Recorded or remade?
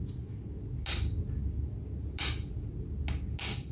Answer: recorded